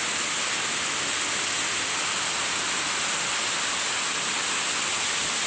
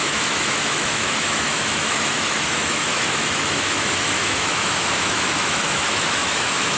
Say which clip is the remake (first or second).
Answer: second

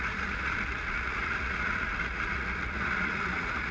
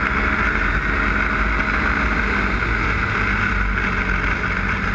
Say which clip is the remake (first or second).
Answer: first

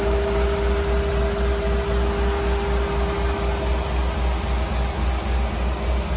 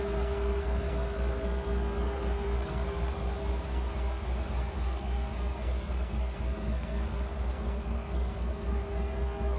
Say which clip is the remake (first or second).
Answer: second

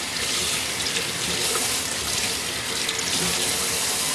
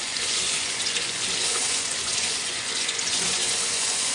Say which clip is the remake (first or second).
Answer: second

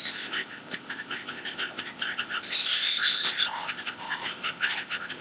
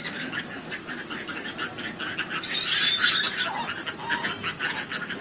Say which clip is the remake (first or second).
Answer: first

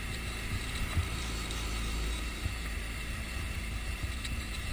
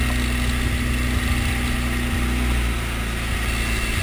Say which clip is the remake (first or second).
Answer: first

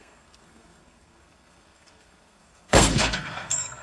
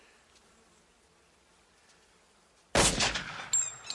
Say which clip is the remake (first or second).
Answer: first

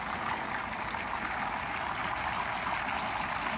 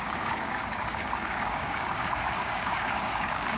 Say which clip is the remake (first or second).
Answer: second